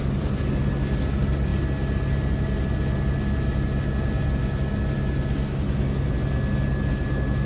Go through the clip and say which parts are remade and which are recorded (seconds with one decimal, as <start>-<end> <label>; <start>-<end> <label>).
0.0-7.5 recorded

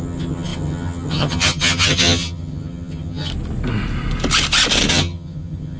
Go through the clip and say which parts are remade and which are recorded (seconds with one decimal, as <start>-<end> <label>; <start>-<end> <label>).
0.0-3.3 remade; 3.3-4.9 recorded; 4.9-5.8 remade